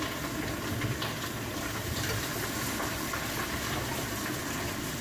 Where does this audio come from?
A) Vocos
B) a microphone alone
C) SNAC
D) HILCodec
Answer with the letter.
B